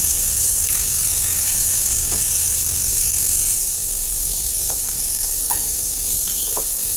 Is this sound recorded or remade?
remade